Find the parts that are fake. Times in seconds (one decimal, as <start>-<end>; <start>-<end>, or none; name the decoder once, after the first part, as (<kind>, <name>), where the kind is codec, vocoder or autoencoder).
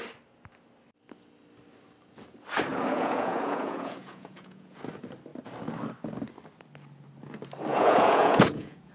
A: 2.7-4.8 (vocoder, Vocos); 7.7-8.9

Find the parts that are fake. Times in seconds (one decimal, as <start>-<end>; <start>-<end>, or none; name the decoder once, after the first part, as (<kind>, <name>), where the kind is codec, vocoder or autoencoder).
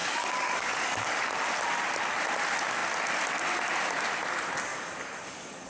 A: 0.0-1.3 (codec, DAC); 4.7-5.7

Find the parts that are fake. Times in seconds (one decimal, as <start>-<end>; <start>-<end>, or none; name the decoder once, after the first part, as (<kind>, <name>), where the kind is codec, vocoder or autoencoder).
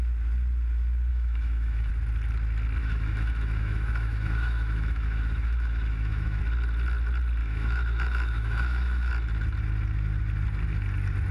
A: 1.1-1.9 (autoencoder, DAC-VAE); 2.8-6.4; 7.4-9.1